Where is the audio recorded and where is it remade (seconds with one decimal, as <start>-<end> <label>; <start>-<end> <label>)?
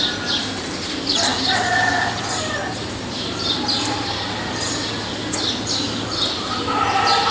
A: 0.0-1.3 recorded; 1.3-2.3 remade; 2.3-2.7 recorded; 2.7-3.6 remade; 3.6-7.3 recorded